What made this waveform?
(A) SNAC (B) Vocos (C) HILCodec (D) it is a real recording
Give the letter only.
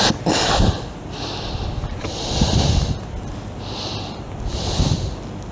D